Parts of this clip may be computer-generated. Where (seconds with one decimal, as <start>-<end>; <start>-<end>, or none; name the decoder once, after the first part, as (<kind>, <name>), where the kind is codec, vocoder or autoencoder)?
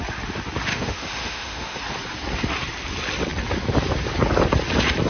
0.7-1.8 (autoencoder, DAC-VAE)